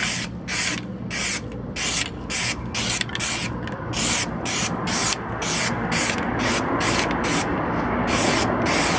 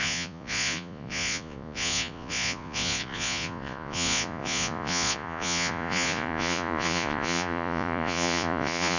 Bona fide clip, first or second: first